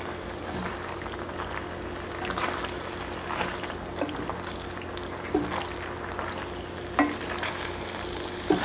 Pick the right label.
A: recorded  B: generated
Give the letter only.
A